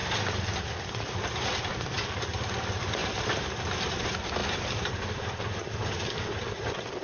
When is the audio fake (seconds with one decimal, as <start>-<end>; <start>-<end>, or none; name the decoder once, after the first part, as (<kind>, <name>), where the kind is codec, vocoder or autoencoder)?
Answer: 0.5-4.4 (vocoder, BigVGAN v2); 6.6-7.0